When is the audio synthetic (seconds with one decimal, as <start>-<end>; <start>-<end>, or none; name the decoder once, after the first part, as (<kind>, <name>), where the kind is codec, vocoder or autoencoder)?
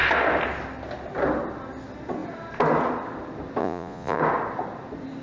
3.6-4.2 (vocoder, Vocos)